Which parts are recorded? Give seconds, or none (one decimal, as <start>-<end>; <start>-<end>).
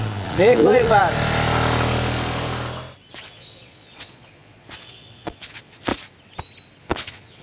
1.0-3.1; 5.9-6.8